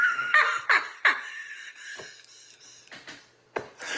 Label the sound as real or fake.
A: real